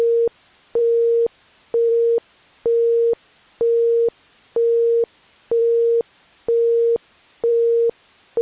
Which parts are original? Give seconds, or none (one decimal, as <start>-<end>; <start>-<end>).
0.0-8.4